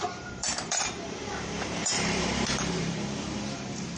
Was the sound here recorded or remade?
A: remade